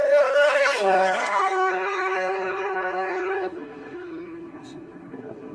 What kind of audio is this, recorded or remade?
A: remade